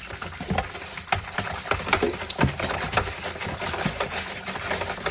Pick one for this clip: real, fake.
real